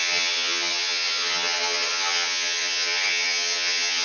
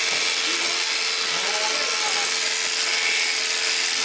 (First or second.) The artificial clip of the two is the first